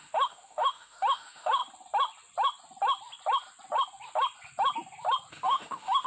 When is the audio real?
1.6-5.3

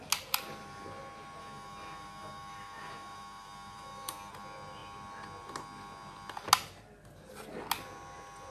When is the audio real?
0.0-1.4; 4.3-8.5

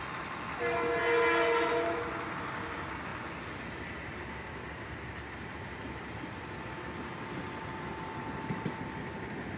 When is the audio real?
0.0-9.6

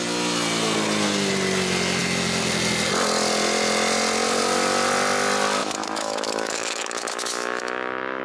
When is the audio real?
0.0-5.6

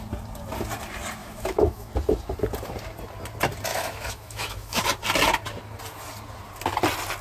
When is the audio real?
0.0-1.2; 1.9-3.7; 4.8-7.2

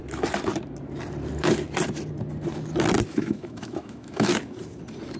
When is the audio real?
0.0-3.1; 4.3-5.2